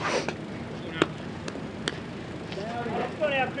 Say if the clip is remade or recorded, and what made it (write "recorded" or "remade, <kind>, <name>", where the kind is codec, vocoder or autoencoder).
recorded